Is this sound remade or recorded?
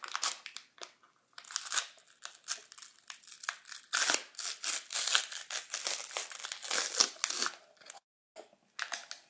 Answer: recorded